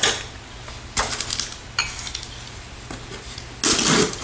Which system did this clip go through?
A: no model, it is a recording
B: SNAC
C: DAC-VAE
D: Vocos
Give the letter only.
A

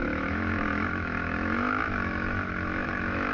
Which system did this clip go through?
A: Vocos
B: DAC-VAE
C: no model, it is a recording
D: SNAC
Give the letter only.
B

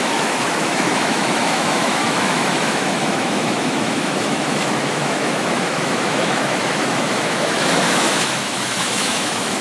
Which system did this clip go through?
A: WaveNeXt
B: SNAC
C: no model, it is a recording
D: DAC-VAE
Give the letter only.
D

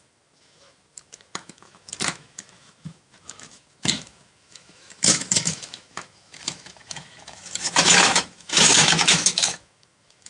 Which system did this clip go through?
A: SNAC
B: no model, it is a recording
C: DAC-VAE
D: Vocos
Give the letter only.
C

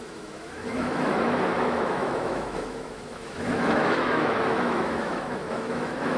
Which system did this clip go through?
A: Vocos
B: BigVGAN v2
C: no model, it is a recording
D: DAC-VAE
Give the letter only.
D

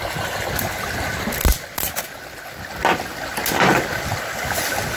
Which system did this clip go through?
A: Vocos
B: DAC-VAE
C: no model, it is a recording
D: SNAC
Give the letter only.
C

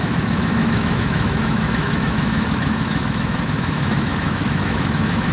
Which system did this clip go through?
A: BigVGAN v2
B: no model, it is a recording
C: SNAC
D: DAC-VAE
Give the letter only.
D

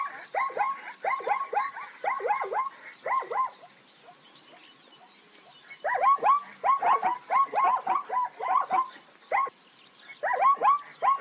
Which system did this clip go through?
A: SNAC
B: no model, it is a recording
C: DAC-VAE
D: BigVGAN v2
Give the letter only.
B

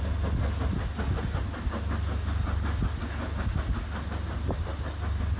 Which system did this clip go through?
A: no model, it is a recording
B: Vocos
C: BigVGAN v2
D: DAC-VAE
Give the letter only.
A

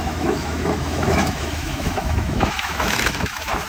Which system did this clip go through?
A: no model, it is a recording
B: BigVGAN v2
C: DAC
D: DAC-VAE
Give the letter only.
D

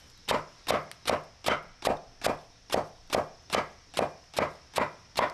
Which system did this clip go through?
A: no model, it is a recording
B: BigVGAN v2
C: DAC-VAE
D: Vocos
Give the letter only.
A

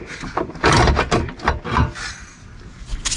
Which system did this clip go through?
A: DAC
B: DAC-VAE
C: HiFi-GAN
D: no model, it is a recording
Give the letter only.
D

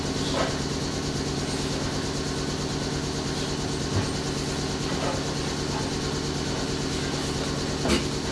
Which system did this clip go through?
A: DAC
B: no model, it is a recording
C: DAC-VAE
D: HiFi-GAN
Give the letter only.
B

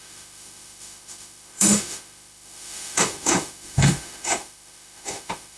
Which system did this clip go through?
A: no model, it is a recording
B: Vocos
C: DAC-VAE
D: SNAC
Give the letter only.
C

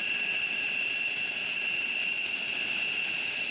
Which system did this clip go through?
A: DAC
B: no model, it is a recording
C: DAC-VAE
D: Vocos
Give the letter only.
B